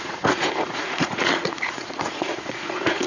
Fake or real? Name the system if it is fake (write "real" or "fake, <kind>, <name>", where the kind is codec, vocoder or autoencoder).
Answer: fake, vocoder, Vocos